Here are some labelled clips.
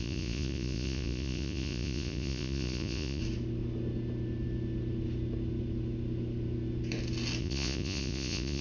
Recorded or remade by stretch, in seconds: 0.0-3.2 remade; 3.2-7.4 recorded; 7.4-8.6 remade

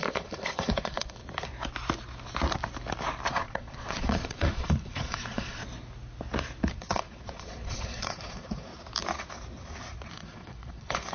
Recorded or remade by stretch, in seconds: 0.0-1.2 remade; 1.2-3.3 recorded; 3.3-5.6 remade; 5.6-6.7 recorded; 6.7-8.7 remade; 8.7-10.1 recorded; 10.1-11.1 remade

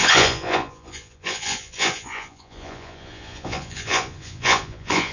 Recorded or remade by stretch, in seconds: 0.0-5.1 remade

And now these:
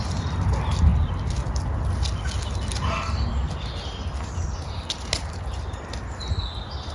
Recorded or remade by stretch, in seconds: 0.0-6.9 recorded

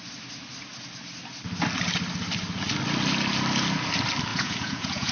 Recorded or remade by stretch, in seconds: 0.0-4.3 recorded; 4.3-5.1 remade

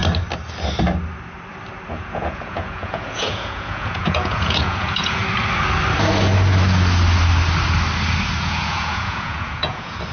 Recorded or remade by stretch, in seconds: 0.0-1.9 recorded; 1.9-5.2 remade; 5.2-8.4 recorded; 8.4-10.1 remade

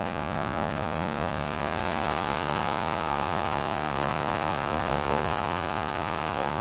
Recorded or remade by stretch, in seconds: 0.0-6.6 remade

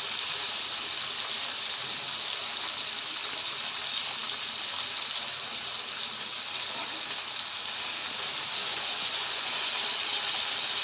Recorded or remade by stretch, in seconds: 0.0-8.6 recorded; 8.6-9.7 remade; 9.7-10.8 recorded